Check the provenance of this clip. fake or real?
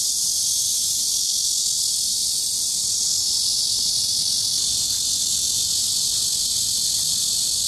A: real